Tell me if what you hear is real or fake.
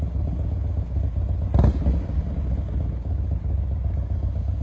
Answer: real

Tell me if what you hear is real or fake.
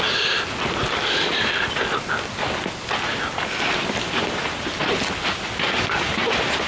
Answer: real